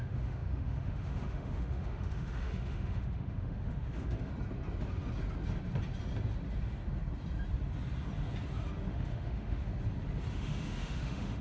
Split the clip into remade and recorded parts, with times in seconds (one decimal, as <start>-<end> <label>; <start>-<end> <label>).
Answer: 0.0-4.3 remade; 4.3-8.9 recorded; 8.9-9.7 remade; 9.7-10.3 recorded; 10.3-11.4 remade